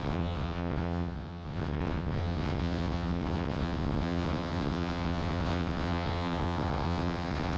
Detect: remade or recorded remade